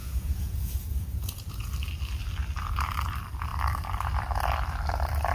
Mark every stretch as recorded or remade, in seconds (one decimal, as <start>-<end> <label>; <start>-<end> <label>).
0.0-1.7 remade; 1.7-5.3 recorded